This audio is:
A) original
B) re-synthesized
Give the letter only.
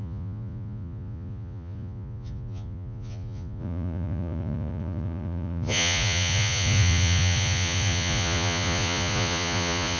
B